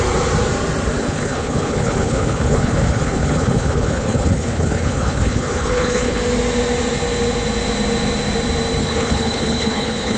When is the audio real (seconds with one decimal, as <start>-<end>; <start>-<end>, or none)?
0.0-1.0; 6.2-8.8

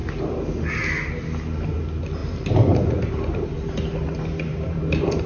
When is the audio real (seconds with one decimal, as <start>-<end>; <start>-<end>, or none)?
0.0-2.2; 3.7-4.5

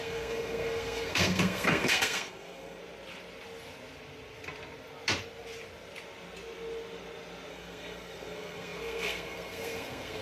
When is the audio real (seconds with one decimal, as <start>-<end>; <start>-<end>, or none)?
2.8-7.5

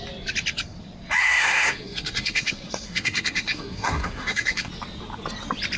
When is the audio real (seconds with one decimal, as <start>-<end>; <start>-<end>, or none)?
0.0-1.2; 4.7-5.8

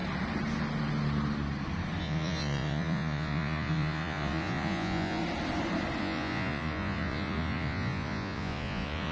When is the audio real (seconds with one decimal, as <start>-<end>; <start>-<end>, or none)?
0.0-2.0; 5.2-6.0